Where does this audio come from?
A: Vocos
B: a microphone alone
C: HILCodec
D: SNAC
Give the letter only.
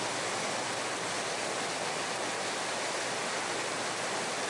B